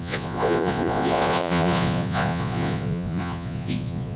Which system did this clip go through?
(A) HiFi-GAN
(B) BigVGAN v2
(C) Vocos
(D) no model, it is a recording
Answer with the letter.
C